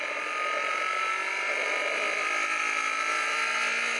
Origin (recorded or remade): remade